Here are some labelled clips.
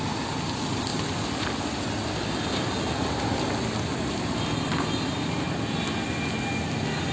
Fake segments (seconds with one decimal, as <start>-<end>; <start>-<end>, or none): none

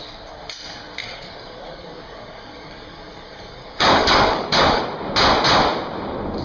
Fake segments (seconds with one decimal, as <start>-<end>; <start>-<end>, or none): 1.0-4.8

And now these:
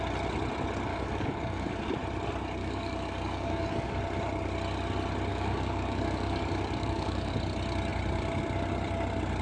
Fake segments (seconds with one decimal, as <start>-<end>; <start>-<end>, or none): 0.9-1.9; 2.6-4.0; 5.3-7.3